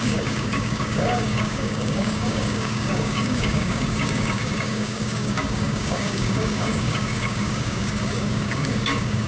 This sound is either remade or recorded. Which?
remade